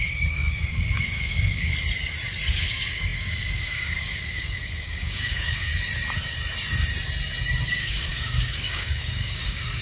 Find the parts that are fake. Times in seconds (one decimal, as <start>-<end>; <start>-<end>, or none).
0.0-1.7; 2.5-5.7; 7.6-9.8